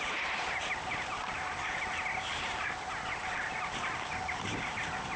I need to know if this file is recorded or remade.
recorded